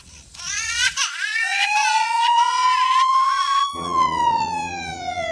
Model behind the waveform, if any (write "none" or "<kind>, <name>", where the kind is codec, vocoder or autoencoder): vocoder, Vocos